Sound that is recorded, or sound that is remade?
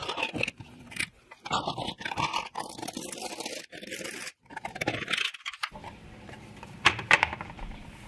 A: remade